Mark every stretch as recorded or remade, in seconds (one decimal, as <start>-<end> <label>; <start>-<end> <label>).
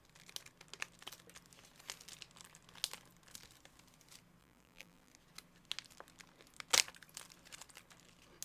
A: 0.0-4.4 recorded; 4.4-5.1 remade; 5.1-8.4 recorded